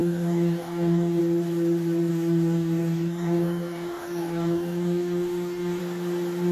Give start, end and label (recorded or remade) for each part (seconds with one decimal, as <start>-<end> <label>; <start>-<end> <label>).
0.0-1.2 remade; 1.2-2.1 recorded; 2.1-5.8 remade; 5.8-6.5 recorded